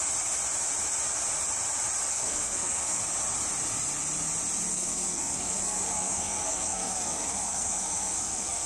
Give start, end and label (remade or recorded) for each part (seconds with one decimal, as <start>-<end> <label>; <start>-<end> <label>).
0.0-2.1 recorded; 2.1-3.0 remade; 3.0-4.7 recorded; 4.7-8.7 remade